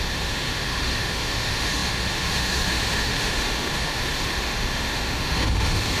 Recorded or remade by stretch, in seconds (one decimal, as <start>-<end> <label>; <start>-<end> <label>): 0.0-6.0 remade